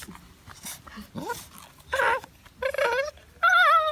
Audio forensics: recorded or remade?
recorded